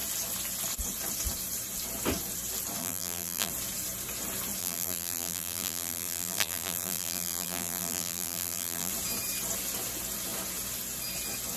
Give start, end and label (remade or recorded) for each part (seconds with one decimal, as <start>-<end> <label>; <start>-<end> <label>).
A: 0.0-2.8 recorded; 2.8-3.5 remade; 3.5-4.6 recorded; 4.6-8.9 remade; 8.9-11.6 recorded